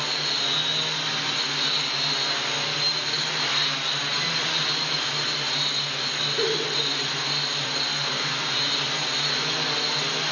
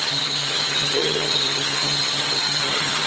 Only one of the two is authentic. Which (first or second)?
first